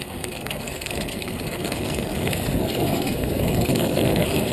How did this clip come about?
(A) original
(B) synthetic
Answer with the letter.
B